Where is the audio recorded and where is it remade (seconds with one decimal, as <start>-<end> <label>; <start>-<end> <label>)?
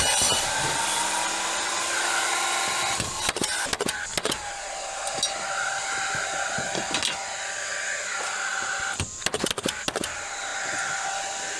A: 0.0-11.6 recorded